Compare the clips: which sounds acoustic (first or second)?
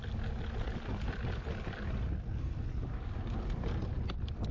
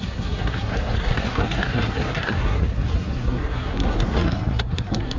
first